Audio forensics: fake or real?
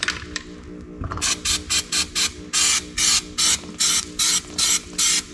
real